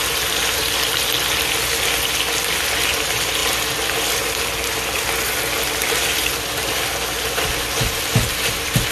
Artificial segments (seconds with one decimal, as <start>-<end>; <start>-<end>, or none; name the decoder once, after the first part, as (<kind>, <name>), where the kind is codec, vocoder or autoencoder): none